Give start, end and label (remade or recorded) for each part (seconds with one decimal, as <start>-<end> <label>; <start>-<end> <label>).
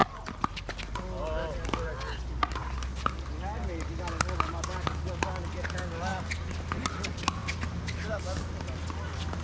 0.0-9.4 recorded